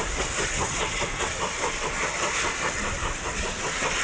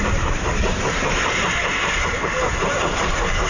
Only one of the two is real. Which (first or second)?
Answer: first